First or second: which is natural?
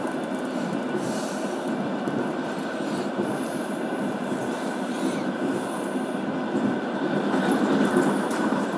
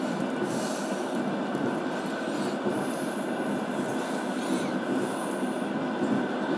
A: second